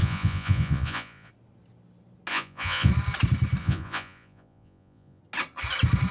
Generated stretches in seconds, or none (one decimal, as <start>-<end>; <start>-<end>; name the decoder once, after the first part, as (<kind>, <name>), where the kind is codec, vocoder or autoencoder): 0.0-1.3 (vocoder, Vocos); 2.3-2.9; 3.6-5.2